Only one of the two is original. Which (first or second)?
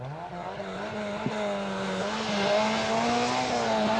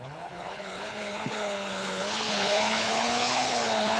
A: first